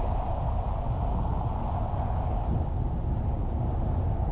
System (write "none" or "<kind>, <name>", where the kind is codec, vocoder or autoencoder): none